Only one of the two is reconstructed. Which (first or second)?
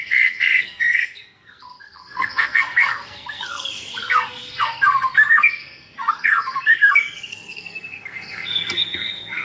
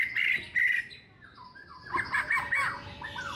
first